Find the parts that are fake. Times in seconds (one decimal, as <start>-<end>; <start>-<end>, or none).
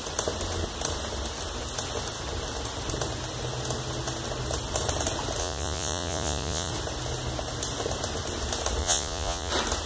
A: 5.4-6.7; 8.8-9.5